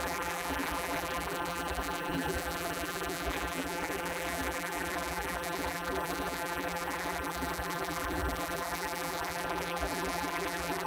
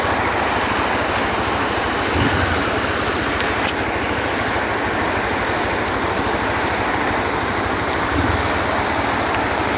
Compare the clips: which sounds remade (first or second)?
first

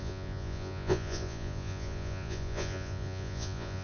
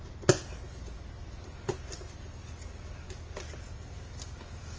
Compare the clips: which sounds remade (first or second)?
first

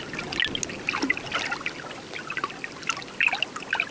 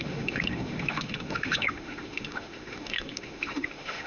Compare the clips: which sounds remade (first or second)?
second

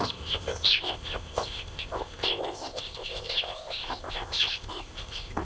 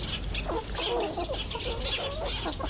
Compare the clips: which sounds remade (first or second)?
first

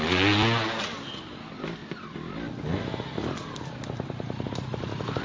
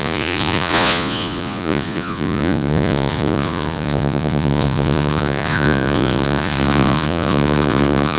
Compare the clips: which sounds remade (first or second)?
second